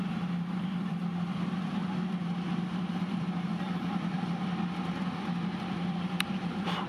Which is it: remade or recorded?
remade